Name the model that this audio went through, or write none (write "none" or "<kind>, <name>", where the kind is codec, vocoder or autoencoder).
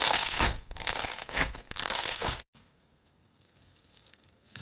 codec, SNAC